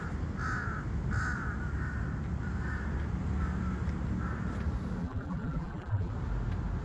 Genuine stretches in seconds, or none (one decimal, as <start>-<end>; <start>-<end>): 0.0-5.0; 6.1-6.8